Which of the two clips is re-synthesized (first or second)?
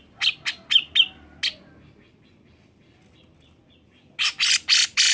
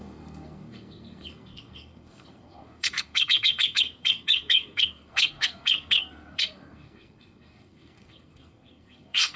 second